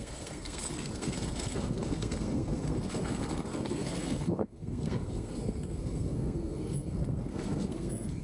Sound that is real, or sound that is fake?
fake